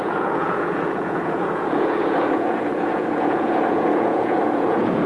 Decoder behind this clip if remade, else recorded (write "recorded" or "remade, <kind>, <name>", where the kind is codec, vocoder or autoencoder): remade, vocoder, Vocos